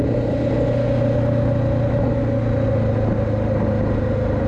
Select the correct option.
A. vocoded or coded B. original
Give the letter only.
B